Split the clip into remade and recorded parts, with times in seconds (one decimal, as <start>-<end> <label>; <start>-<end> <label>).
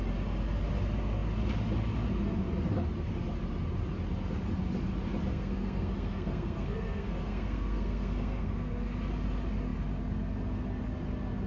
0.0-5.3 recorded; 5.3-8.7 remade; 8.7-11.5 recorded